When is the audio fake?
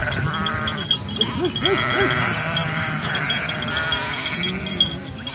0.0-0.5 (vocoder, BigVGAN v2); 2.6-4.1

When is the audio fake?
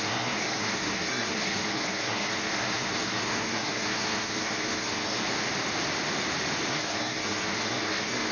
0.0-5.2 (codec, SNAC); 6.7-8.3